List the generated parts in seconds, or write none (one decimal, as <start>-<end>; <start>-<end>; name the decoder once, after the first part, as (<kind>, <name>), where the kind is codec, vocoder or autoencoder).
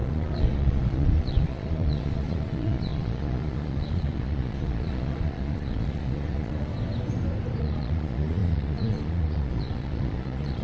0.0-6.7 (vocoder, Vocos); 7.6-10.6